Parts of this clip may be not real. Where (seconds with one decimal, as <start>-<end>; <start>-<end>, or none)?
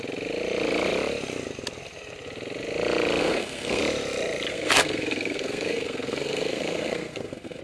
3.2-3.8; 4.5-7.6